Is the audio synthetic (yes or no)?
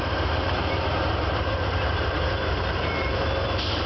yes